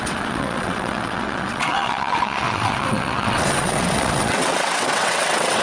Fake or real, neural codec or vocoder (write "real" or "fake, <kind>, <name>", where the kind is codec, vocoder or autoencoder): fake, vocoder, WaveNeXt